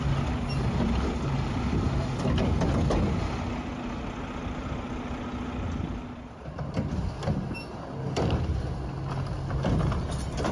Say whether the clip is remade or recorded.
recorded